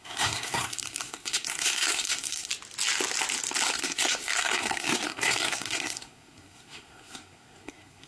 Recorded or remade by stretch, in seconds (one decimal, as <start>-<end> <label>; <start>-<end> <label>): 0.0-2.5 remade; 2.5-3.7 recorded; 3.7-8.1 remade

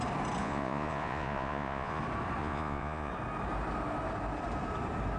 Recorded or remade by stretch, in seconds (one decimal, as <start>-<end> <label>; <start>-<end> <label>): 0.0-0.4 recorded; 0.4-2.0 remade; 2.0-2.4 recorded; 2.4-3.1 remade; 3.1-5.2 recorded